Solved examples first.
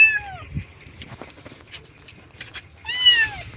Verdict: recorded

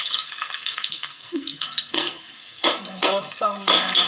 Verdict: remade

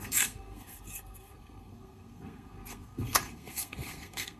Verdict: remade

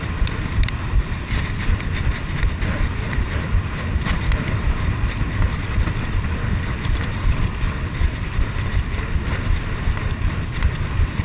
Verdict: recorded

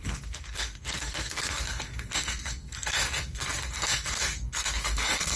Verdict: remade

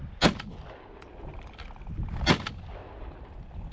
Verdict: recorded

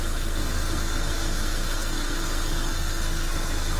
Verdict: remade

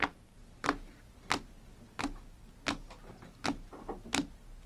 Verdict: recorded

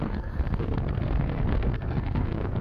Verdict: remade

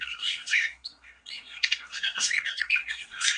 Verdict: remade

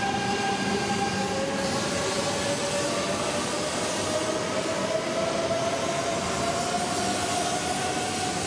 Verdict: recorded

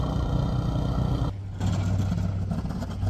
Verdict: recorded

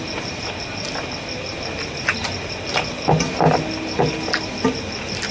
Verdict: recorded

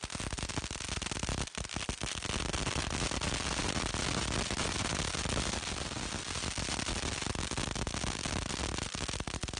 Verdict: recorded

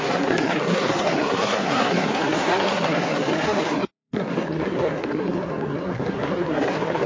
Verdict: remade